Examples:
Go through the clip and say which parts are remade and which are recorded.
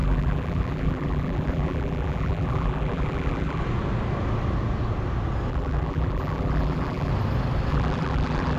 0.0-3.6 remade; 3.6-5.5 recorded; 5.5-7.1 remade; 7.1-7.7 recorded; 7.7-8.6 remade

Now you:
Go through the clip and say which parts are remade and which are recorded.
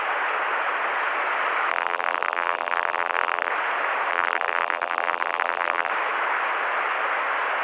0.0-1.7 recorded; 1.7-3.5 remade; 3.5-4.1 recorded; 4.1-5.9 remade; 5.9-7.6 recorded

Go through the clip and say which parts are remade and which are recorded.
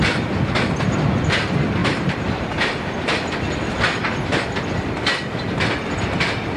0.0-1.8 recorded; 1.8-2.9 remade; 2.9-6.6 recorded